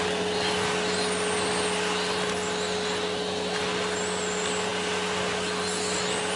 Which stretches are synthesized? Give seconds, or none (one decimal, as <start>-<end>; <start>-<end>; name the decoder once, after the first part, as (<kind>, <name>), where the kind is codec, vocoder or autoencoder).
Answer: none